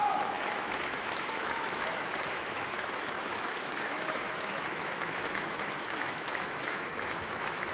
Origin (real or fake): fake